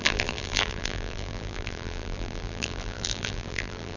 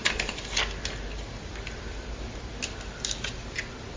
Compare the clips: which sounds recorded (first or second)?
second